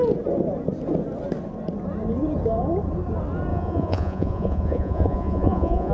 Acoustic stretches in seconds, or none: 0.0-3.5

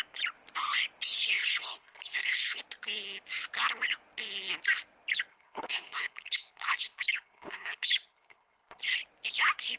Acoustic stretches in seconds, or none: 0.0-1.4; 2.6-5.3; 8.8-9.8